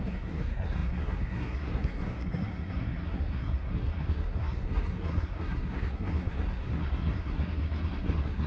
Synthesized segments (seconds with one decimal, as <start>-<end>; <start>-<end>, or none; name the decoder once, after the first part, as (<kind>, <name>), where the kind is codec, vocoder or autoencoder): 0.0-8.5 (codec, SNAC)